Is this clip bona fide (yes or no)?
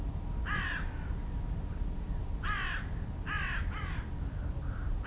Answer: yes